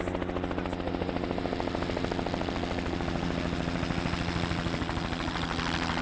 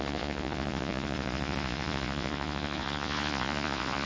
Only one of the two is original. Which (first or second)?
first